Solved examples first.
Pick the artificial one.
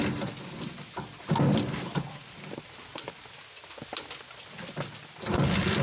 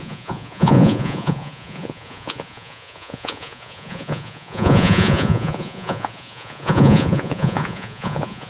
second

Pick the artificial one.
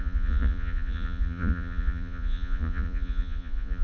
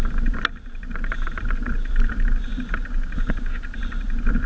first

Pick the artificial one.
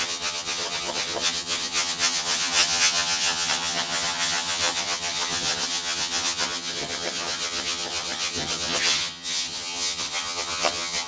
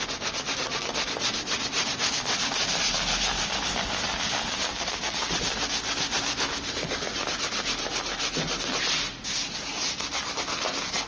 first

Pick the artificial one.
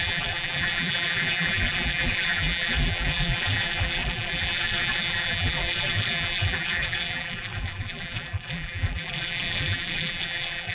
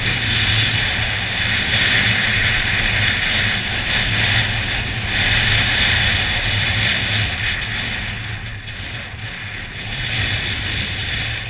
first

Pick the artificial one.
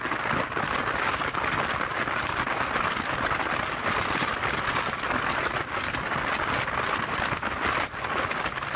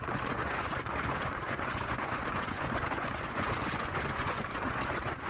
second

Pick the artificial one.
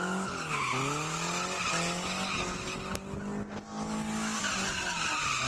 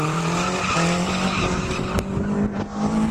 second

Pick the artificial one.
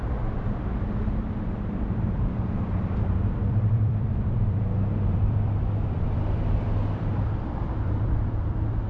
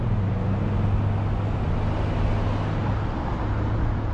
first